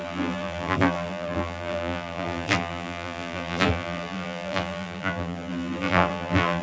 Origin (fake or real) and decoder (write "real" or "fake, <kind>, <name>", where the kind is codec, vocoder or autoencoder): fake, vocoder, BigVGAN v2